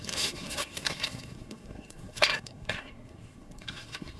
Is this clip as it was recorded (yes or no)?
no